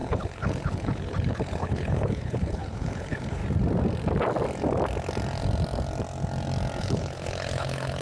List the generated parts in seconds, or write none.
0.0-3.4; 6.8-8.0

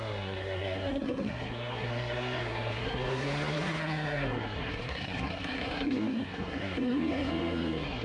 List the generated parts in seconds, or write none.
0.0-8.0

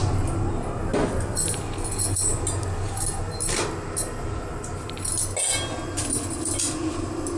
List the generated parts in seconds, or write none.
none

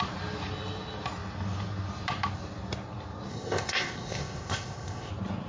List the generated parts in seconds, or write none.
3.3-5.1

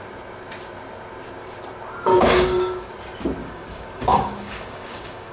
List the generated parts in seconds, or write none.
2.1-2.9; 3.4-5.3

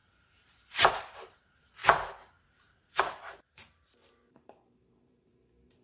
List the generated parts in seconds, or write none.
0.0-1.8; 2.5-5.8